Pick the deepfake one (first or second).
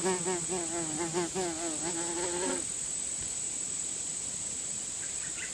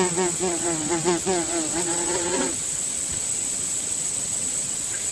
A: second